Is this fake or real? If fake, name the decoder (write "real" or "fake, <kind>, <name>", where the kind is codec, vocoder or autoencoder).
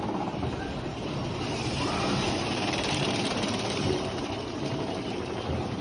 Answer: fake, vocoder, BigVGAN v2